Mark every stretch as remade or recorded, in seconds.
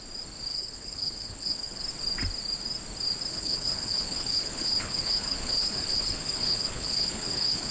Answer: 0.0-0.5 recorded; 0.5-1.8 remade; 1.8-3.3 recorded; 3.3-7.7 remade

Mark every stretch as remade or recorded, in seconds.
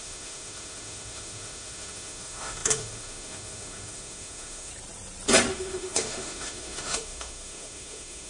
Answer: 0.0-4.7 remade; 4.7-5.5 recorded; 5.5-8.3 remade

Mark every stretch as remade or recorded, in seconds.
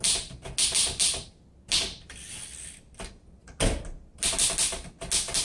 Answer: 0.0-5.4 recorded